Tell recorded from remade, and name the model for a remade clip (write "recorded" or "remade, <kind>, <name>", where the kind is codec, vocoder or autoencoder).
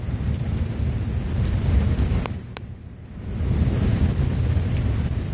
recorded